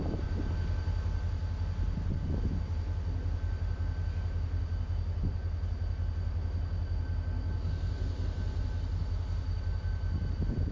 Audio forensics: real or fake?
real